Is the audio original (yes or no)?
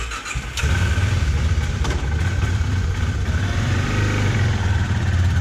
no